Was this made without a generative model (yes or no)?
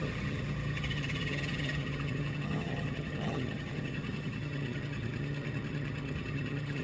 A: no